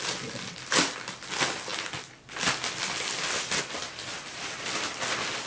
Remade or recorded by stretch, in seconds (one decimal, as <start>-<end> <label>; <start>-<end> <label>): 0.0-5.5 recorded